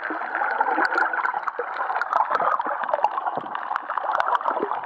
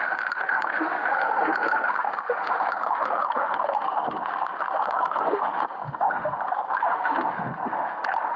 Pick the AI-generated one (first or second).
second